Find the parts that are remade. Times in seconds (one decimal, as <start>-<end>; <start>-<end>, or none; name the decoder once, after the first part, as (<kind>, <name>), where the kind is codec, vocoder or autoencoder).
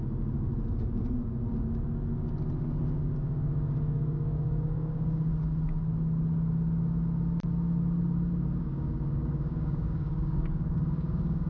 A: 0.0-0.5 (codec, DAC); 2.8-5.3; 8.6-11.5